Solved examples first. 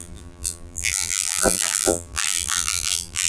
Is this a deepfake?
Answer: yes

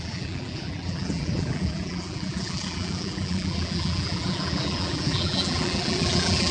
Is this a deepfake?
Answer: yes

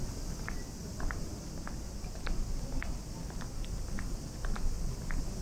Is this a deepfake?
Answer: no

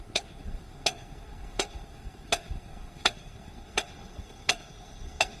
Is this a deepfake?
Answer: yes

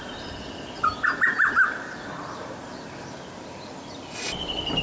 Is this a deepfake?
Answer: no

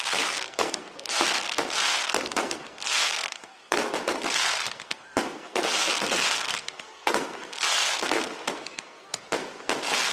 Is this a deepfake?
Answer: yes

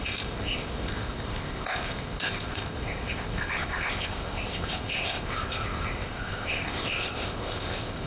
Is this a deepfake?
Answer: yes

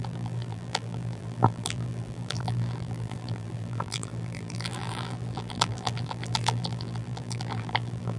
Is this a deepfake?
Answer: yes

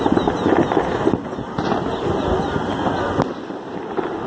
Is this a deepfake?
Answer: no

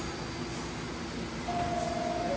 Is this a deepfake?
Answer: no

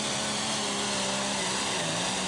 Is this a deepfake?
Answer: no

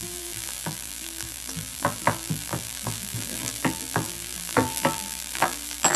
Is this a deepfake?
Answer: yes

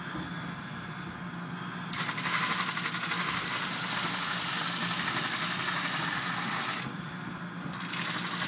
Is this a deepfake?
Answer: no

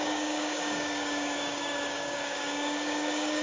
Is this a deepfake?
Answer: yes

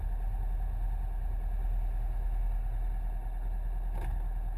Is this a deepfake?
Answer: no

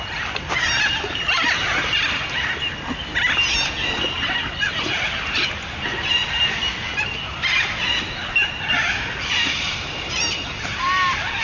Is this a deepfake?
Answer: no